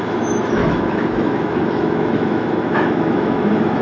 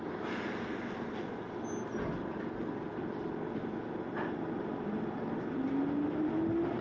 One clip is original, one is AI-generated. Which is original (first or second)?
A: second